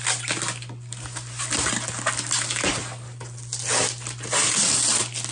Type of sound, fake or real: real